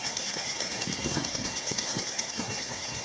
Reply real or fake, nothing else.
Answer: fake